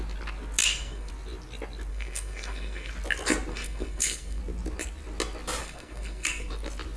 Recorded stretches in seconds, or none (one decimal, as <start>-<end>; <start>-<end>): 0.0-0.6; 1.1-1.9; 2.9-3.5; 4.4-5.6; 6.5-7.0